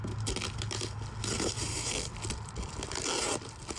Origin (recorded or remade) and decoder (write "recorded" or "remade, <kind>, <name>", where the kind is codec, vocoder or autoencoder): recorded